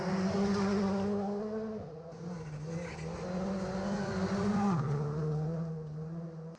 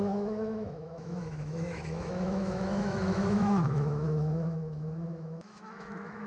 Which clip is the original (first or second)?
first